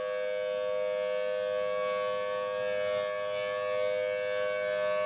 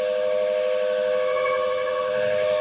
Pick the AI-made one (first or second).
second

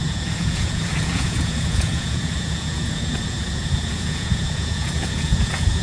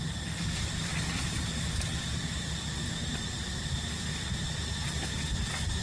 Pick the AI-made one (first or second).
first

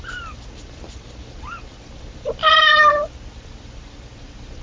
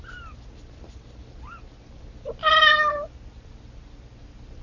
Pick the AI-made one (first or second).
first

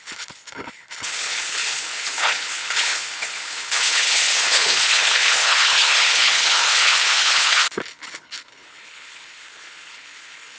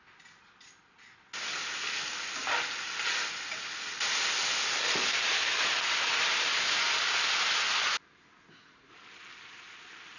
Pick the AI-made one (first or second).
first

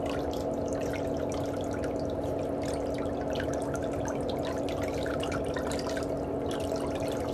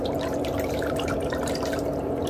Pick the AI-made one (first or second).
second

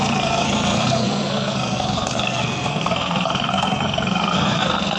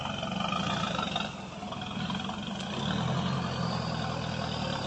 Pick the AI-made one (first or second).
first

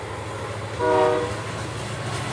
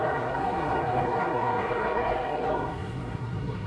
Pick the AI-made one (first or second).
second